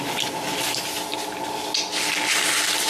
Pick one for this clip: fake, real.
real